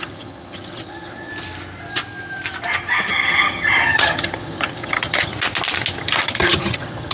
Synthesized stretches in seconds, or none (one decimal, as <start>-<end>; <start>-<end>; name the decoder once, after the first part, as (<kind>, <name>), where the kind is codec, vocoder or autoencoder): 0.0-1.3 (vocoder, HiFi-GAN); 3.1-5.3; 6.0-7.1